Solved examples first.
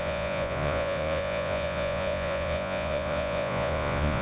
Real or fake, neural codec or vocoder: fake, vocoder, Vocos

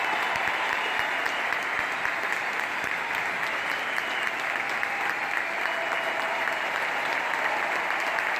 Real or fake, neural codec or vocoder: real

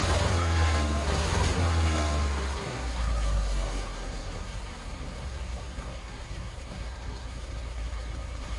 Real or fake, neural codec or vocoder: fake, codec, SNAC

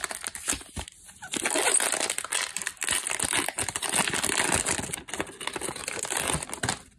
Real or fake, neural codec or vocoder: real